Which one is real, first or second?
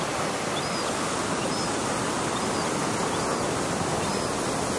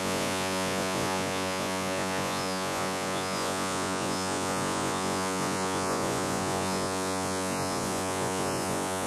first